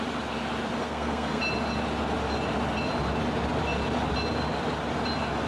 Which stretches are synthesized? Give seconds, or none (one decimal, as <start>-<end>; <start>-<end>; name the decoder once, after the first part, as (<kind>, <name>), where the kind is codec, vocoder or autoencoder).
0.8-1.4 (codec, SNAC)